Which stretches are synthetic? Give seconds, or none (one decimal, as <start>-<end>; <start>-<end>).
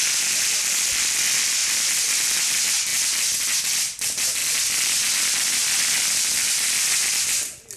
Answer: 1.6-2.1; 4.4-6.9